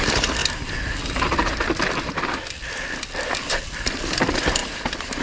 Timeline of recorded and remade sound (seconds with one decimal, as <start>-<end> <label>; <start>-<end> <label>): 0.0-0.4 remade; 0.4-3.5 recorded; 3.5-5.2 remade